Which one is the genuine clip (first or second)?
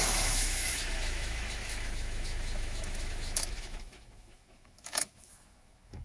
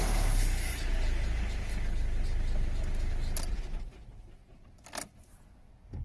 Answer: second